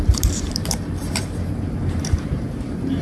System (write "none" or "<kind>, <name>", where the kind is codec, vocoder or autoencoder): vocoder, BigVGAN v2